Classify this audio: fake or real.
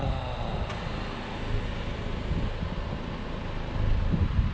real